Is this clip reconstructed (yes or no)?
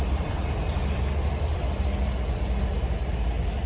yes